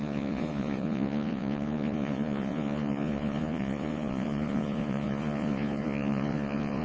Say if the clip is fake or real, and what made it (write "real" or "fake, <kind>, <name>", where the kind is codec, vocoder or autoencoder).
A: fake, vocoder, Vocos